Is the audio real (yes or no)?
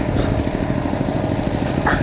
yes